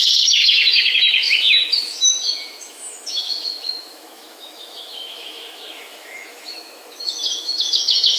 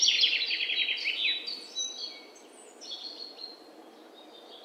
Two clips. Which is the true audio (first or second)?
second